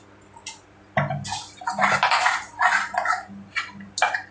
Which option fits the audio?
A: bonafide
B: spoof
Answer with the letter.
A